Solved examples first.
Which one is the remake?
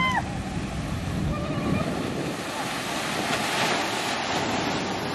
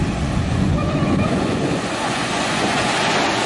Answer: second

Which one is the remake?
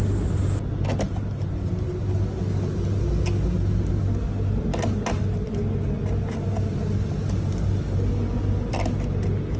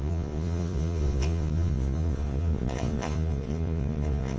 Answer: second